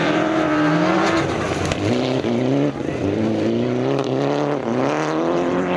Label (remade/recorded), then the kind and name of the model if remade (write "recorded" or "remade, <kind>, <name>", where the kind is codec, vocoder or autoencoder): recorded